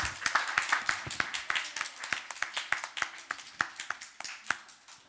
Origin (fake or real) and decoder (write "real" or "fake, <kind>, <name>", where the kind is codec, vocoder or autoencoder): real